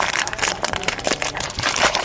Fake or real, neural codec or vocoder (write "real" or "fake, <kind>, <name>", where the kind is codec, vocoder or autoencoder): fake, vocoder, BigVGAN v2